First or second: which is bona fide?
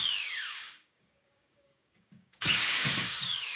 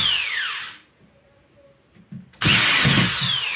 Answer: second